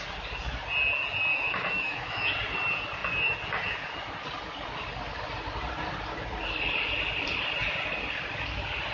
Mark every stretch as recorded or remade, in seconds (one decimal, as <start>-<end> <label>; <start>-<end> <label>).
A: 0.0-1.3 recorded; 1.3-2.3 remade; 2.3-8.9 recorded